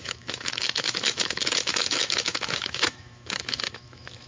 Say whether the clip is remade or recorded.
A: remade